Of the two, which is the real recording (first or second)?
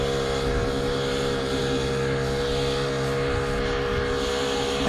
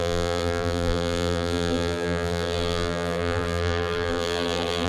first